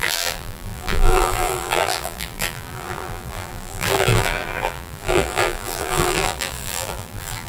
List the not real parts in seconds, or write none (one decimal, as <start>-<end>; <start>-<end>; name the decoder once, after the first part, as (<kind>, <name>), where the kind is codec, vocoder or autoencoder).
0.0-7.5 (vocoder, BigVGAN v2)